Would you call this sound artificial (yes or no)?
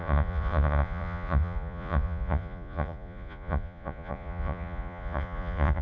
yes